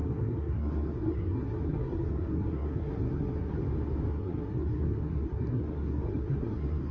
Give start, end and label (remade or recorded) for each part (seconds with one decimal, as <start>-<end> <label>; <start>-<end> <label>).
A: 0.0-3.5 remade; 3.5-4.1 recorded; 4.1-6.9 remade